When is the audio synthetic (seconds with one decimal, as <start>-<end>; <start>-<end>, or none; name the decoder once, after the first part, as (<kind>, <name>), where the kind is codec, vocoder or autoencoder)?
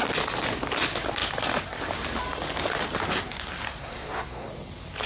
3.8-4.5 (codec, SNAC)